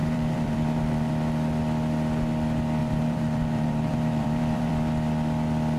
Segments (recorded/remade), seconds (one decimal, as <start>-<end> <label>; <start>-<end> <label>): 0.0-1.1 remade; 1.1-2.8 recorded; 2.8-4.7 remade; 4.7-5.8 recorded